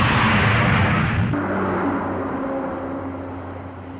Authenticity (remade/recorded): recorded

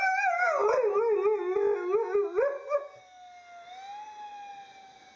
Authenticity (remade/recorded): recorded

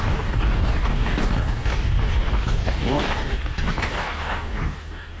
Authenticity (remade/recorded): remade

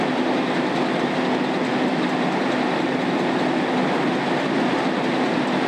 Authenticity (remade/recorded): recorded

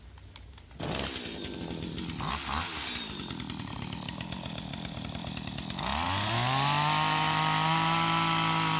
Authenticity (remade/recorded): recorded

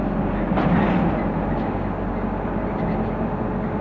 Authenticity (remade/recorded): recorded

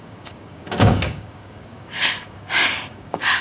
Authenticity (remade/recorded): remade